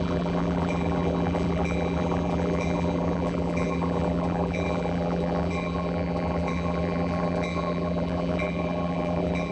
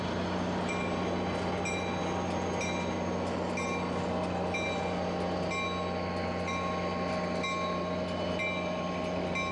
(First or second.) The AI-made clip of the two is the first